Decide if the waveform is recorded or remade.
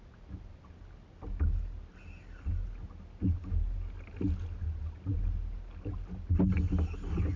recorded